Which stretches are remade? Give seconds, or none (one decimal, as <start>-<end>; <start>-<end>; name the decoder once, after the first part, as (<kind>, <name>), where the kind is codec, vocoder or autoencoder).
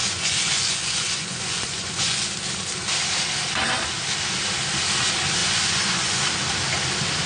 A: 0.0-2.3 (vocoder, Vocos); 5.4-6.2